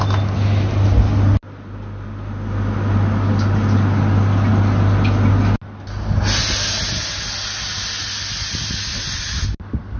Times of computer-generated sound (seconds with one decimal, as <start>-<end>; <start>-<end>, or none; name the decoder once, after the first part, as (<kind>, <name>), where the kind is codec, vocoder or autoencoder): none